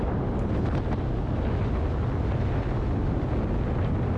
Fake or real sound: real